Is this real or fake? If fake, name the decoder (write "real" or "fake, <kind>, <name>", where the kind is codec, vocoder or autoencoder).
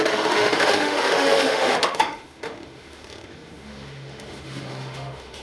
fake, autoencoder, DAC-VAE